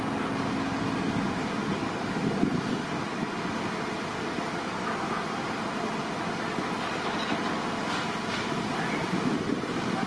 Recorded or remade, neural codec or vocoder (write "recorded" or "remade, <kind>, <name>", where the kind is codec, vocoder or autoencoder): recorded